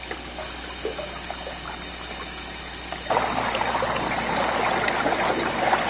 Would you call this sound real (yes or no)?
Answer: yes